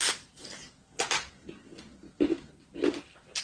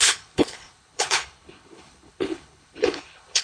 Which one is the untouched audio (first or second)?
first